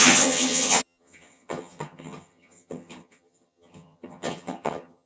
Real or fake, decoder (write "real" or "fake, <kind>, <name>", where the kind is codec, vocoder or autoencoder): fake, vocoder, HiFi-GAN